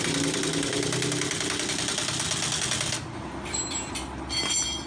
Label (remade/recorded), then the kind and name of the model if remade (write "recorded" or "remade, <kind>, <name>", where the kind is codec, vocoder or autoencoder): recorded